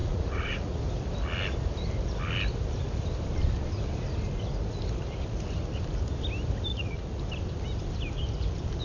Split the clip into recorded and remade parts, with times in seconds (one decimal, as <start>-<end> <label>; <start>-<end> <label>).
0.0-0.8 remade; 0.8-6.7 recorded; 6.7-7.2 remade; 7.2-8.8 recorded